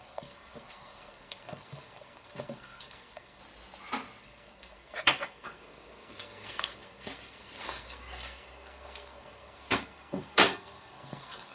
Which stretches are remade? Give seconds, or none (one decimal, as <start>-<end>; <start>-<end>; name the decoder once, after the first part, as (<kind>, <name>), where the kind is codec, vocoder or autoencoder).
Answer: 0.0-3.4 (codec, SNAC); 4.2-11.5